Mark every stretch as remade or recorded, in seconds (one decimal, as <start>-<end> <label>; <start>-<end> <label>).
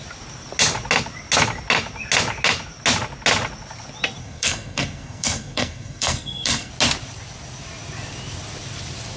0.0-4.2 recorded; 4.2-6.7 remade; 6.7-9.2 recorded